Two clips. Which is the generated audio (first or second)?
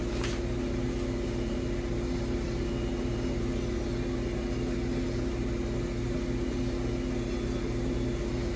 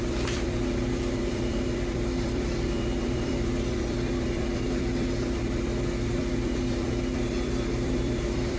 second